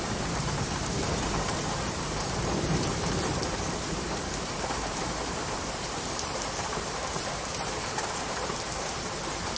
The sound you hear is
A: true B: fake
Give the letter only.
B